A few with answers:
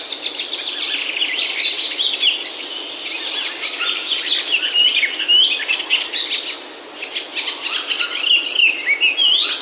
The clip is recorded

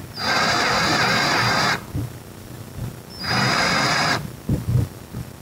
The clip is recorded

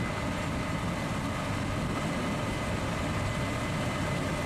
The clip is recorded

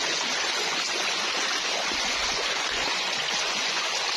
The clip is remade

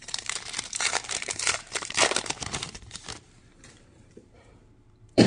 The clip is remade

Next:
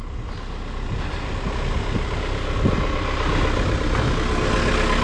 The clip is recorded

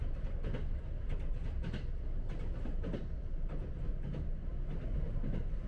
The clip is recorded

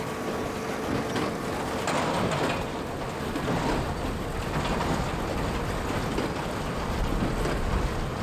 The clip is recorded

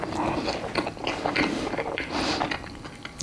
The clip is recorded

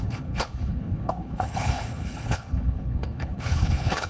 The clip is remade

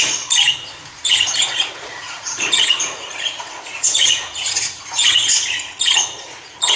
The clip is remade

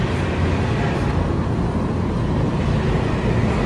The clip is recorded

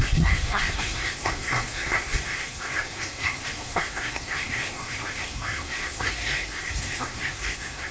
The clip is remade